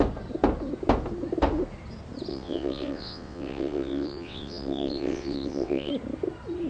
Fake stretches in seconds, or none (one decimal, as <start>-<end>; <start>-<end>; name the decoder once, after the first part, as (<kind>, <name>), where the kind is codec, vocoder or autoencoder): 2.3-5.9 (vocoder, WaveNeXt)